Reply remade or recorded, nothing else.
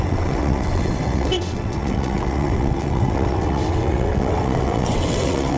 remade